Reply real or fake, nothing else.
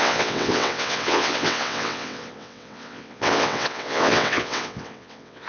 fake